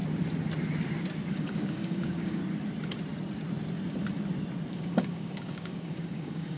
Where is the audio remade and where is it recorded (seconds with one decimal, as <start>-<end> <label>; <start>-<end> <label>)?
0.0-1.3 recorded; 1.3-2.4 remade; 2.4-4.7 recorded; 4.7-6.6 remade